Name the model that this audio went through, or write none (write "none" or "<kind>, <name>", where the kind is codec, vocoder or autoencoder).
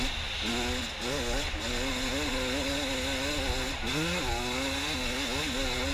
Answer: none